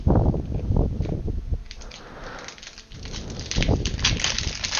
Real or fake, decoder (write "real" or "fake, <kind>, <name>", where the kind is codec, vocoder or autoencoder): real